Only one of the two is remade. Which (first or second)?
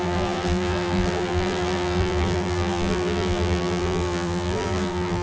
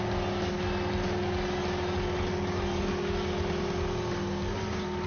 first